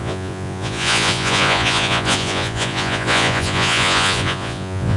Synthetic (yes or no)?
yes